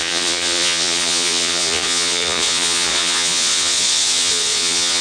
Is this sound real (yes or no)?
no